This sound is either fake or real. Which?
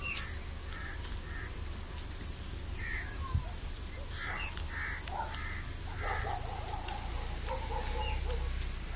real